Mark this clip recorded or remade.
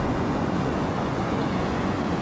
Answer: remade